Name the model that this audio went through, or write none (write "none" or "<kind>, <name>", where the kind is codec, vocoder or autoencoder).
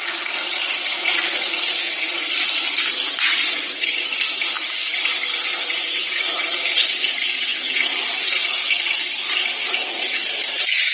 none